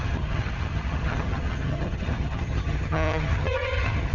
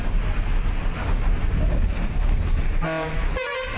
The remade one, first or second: first